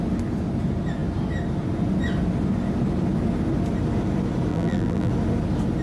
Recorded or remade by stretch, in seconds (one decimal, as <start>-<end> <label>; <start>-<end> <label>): 0.0-4.5 recorded; 4.5-5.1 remade; 5.1-5.8 recorded